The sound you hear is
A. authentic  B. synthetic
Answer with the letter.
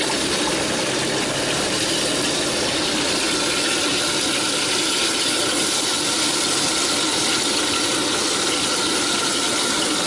A